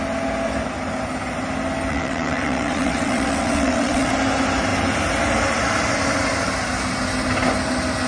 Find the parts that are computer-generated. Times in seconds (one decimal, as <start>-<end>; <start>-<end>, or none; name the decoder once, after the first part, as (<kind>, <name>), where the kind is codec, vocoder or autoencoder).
1.9-4.1 (vocoder, WaveNeXt)